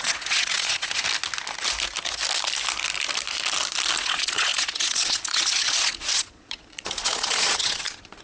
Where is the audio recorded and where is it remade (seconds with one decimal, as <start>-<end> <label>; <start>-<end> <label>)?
0.0-1.0 remade; 1.0-4.0 recorded; 4.0-8.2 remade